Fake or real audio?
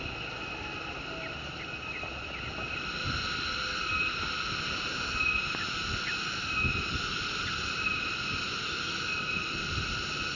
real